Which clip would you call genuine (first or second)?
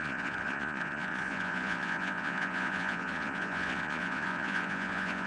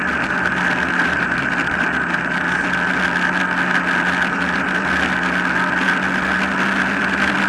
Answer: second